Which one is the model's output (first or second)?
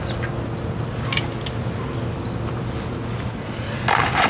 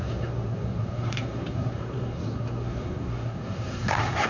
second